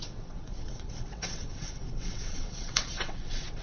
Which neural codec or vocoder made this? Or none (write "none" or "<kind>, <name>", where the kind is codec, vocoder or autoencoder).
vocoder, WaveNeXt